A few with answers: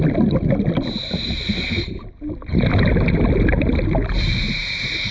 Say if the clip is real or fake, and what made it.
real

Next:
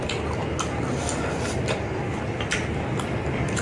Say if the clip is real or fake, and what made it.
real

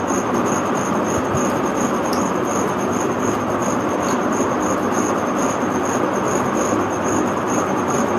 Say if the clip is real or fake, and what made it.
real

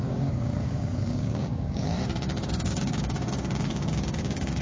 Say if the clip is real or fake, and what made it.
fake, codec, DAC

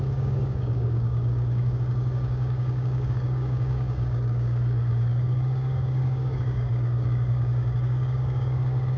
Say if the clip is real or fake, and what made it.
fake, codec, DAC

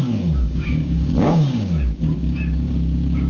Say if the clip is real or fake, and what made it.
fake, codec, DAC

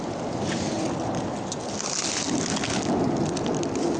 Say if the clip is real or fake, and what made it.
real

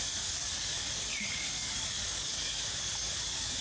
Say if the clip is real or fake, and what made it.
fake, codec, DAC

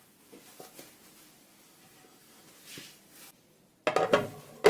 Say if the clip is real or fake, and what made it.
real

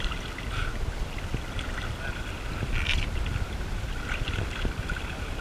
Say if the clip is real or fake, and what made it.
real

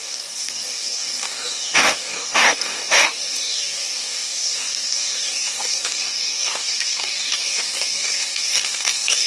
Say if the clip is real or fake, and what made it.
fake, codec, DAC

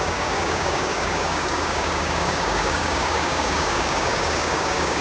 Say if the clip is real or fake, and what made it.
fake, codec, DAC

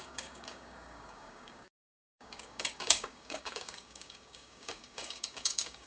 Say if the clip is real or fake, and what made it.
fake, codec, DAC